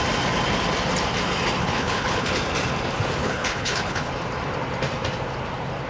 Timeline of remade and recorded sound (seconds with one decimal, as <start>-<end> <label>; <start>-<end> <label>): 0.0-1.6 recorded; 1.6-2.3 remade; 2.3-3.2 recorded; 3.2-4.1 remade; 4.1-5.9 recorded